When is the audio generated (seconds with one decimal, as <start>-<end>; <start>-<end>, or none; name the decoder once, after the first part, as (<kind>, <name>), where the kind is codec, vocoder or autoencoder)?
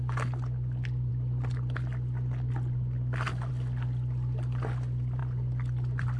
none